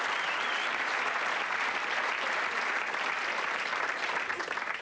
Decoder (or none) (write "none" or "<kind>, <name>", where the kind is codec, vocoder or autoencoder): none